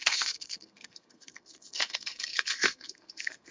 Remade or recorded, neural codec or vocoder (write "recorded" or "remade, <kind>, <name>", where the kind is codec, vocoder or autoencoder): remade, codec, SNAC